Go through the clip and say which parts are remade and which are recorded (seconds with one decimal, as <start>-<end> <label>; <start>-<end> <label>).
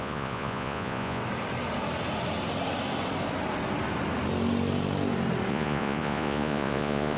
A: 0.0-1.2 remade; 1.2-5.5 recorded; 5.5-7.2 remade